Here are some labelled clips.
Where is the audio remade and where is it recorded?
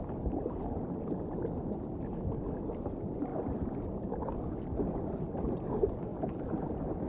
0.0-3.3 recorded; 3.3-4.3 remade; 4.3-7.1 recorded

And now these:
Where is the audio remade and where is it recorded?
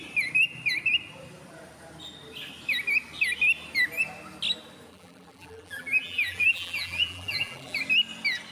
0.0-4.9 recorded; 4.9-7.8 remade; 7.8-8.5 recorded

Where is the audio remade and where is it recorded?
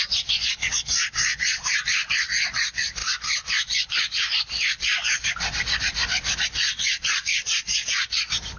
0.0-3.0 recorded; 3.0-5.3 remade; 5.3-7.0 recorded; 7.0-8.6 remade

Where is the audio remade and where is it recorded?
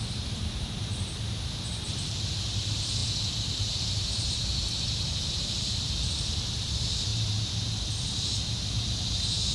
0.0-9.5 remade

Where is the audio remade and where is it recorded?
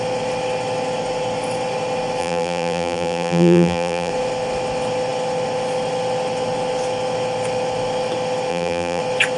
0.0-2.2 recorded; 2.2-4.1 remade; 4.1-8.5 recorded; 8.5-9.0 remade; 9.0-9.4 recorded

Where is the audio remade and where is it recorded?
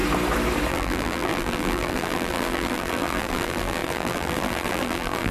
0.0-0.7 recorded; 0.7-5.3 remade